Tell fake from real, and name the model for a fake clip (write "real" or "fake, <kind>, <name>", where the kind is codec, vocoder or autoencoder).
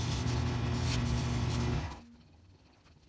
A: real